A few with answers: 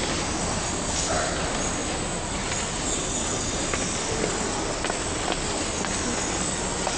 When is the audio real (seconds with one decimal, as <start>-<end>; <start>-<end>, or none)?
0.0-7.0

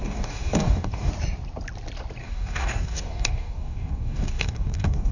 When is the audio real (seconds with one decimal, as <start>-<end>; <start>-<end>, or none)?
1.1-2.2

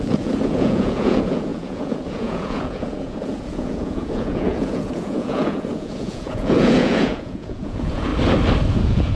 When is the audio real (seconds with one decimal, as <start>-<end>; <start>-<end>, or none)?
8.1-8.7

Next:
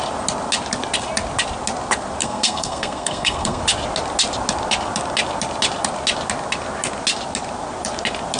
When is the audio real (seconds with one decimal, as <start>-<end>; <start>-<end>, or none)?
0.0-2.2; 3.6-8.4